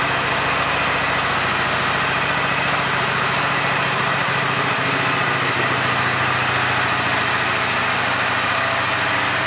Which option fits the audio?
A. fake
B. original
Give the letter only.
B